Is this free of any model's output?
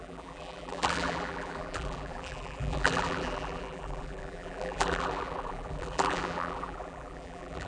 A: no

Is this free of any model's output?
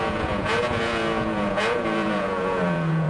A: no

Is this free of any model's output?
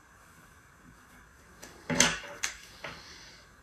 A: no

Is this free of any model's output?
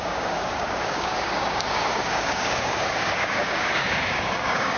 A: no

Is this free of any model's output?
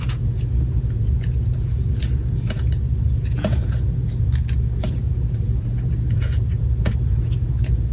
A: no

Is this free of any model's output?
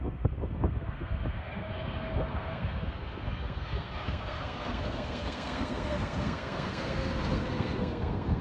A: no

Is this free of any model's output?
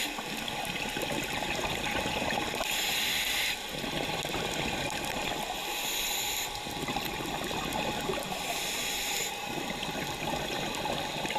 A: yes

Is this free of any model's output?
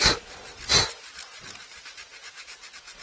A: yes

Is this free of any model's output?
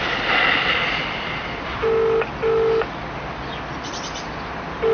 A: yes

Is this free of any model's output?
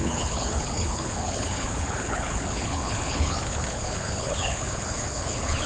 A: no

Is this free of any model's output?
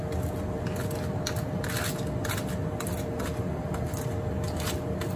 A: yes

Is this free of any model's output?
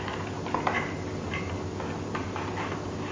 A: yes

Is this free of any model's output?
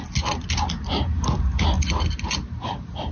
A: yes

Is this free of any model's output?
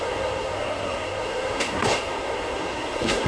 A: no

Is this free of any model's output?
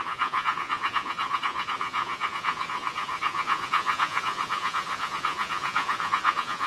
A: no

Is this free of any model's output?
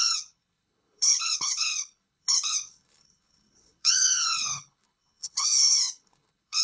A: no